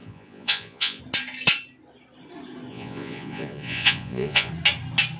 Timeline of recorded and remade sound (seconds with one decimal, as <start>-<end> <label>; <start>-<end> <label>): 0.0-1.0 remade; 1.0-2.7 recorded; 2.7-4.5 remade; 4.5-5.2 recorded